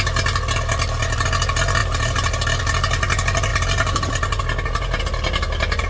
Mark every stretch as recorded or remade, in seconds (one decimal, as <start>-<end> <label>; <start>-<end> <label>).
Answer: 0.0-1.8 recorded; 1.8-2.6 remade; 2.6-3.5 recorded; 3.5-5.0 remade; 5.0-5.9 recorded